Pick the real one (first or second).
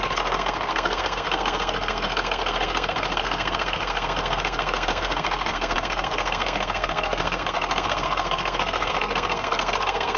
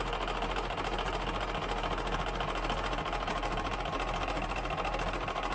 second